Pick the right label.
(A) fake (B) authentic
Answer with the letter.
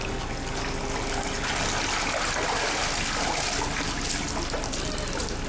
B